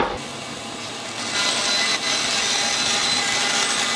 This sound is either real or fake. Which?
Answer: real